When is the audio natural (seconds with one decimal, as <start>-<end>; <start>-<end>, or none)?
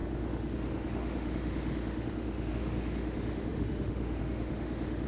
none